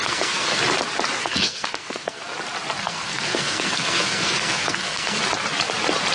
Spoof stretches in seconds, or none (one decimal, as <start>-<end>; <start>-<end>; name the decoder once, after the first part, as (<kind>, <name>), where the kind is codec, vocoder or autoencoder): 0.0-0.6 (codec, SNAC); 1.2-2.2; 2.8-5.2